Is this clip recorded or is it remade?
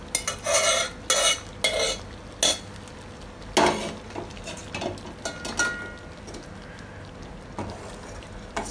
recorded